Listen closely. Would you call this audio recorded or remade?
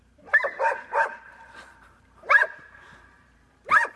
remade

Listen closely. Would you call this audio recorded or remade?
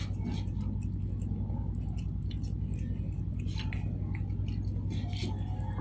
recorded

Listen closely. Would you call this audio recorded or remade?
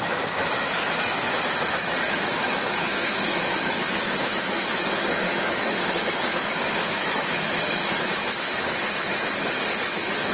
remade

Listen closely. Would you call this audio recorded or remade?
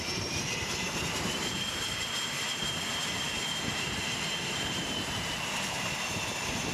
remade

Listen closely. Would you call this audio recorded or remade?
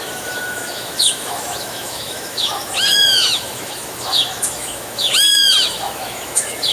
remade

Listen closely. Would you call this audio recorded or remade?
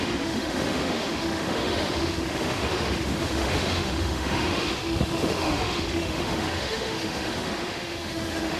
remade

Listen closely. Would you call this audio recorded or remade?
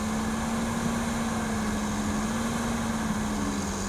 recorded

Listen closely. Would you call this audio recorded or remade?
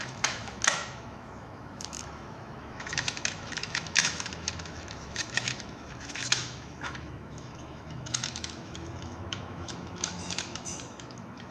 remade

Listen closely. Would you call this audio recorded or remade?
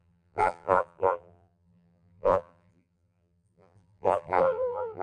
remade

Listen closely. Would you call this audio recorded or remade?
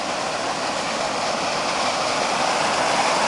recorded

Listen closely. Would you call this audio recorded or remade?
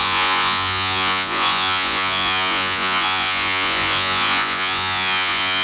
remade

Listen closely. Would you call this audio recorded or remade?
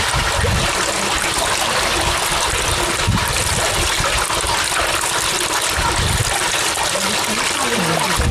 recorded